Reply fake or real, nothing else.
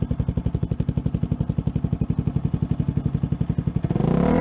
real